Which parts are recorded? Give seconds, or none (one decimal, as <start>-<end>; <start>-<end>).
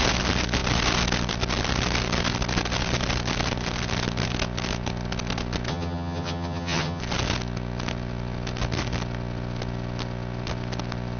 0.0-5.7; 7.0-11.2